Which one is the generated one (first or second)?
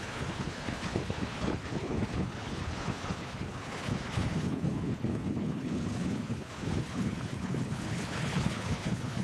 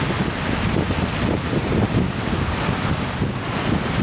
first